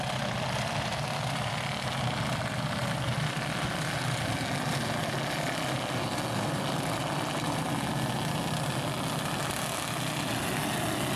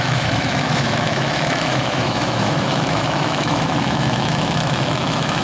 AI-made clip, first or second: second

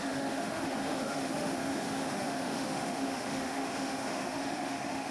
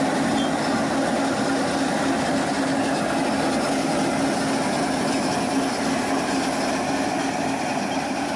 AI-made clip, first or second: first